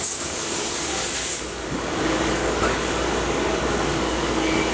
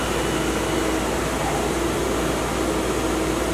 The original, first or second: second